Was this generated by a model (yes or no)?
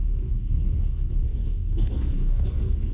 yes